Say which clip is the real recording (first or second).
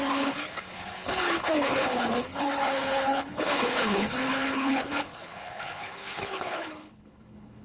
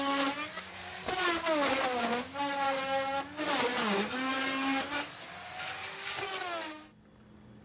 second